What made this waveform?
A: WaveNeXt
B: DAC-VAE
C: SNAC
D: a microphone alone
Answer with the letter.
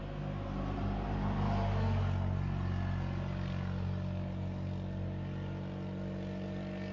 D